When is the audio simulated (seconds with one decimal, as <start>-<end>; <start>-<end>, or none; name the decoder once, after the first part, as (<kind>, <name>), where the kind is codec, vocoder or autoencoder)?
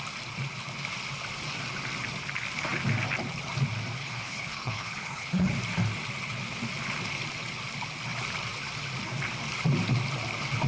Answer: 4.0-5.5 (codec, HILCodec)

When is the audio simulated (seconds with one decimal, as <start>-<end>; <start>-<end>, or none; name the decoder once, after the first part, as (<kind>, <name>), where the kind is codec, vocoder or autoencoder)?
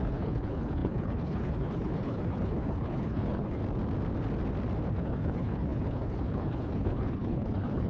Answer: 0.0-3.6 (codec, HILCodec); 4.9-7.9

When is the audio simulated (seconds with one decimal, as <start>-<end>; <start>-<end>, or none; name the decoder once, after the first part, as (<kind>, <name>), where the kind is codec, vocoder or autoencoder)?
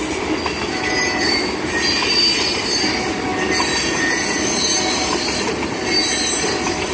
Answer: none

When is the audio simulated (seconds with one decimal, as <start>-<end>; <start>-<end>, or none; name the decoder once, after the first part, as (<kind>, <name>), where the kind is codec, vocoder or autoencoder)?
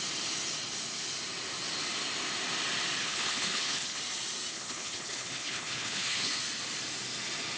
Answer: 3.0-4.0 (codec, HILCodec); 4.5-6.4